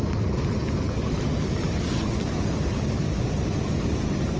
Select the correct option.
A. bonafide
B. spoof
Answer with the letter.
A